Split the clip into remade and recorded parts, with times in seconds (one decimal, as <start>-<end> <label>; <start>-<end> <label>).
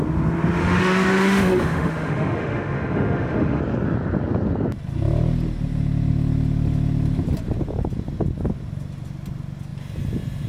0.0-0.6 recorded; 0.6-3.6 remade; 3.6-10.5 recorded